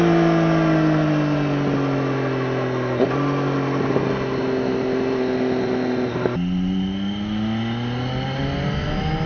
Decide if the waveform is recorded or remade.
recorded